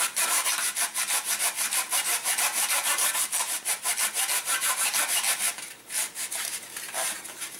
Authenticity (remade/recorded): remade